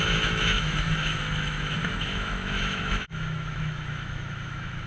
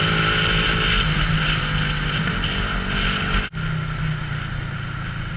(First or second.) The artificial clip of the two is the first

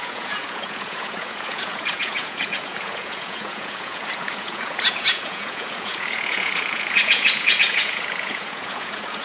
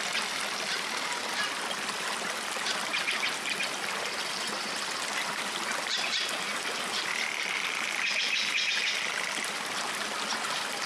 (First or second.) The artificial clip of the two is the first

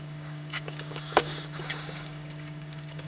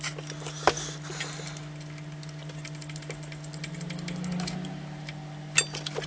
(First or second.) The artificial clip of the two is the first